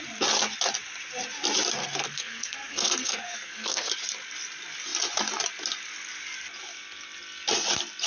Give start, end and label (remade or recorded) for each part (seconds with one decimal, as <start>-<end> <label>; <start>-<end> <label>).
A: 0.0-1.8 recorded; 1.8-3.9 remade; 3.9-8.1 recorded